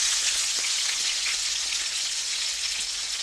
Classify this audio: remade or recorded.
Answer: remade